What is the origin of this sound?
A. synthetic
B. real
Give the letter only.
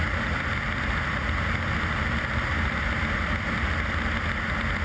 B